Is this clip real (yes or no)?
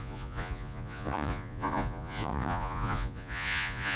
no